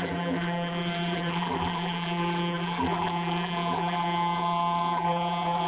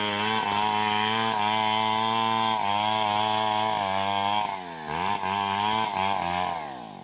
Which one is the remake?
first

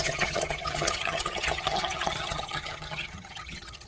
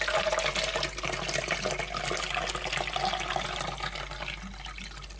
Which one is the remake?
first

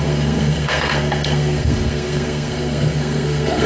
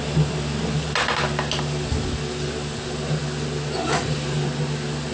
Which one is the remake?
first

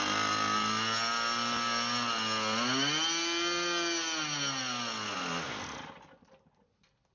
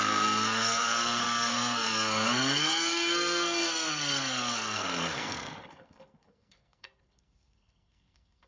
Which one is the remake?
second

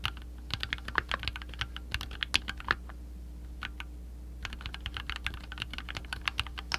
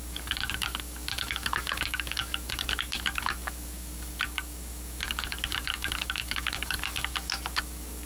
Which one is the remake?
second